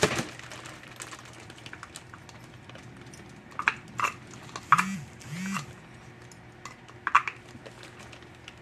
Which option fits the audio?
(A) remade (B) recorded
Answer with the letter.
B